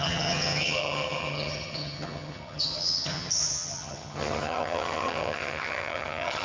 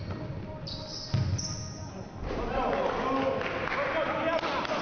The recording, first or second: second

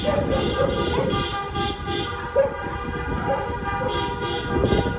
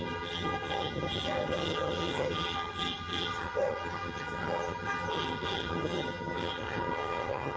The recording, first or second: first